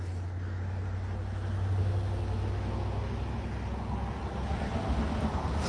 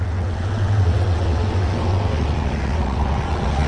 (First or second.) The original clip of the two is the first